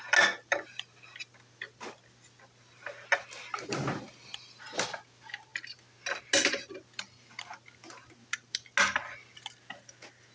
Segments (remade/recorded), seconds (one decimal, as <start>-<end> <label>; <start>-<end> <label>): 0.0-10.3 recorded